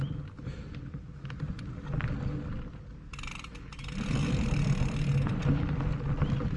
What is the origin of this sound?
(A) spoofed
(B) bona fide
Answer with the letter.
B